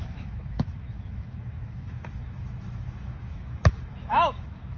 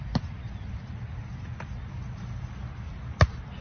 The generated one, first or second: first